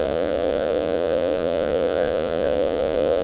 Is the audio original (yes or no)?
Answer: no